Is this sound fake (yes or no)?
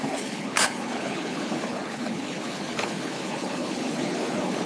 yes